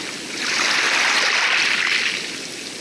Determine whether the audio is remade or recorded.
remade